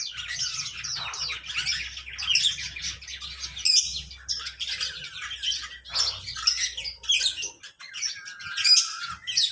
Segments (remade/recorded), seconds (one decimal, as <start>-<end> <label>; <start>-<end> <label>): 0.0-9.5 recorded